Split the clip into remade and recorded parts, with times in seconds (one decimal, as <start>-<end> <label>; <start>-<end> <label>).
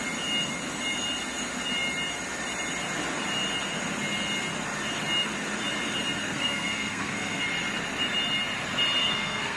0.0-6.2 recorded; 6.2-7.4 remade; 7.4-9.0 recorded; 9.0-9.6 remade